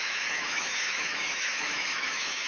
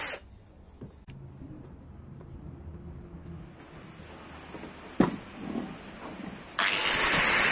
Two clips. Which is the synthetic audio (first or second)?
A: first